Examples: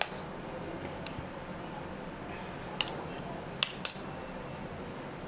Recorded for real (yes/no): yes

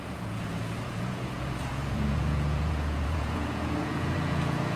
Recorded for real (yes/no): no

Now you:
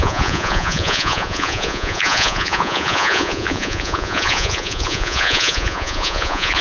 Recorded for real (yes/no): no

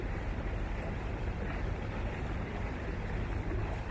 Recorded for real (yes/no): no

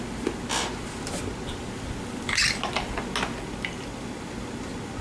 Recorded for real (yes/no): yes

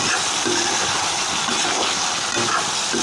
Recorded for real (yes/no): yes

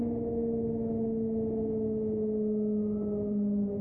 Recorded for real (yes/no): yes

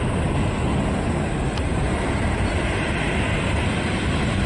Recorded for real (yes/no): yes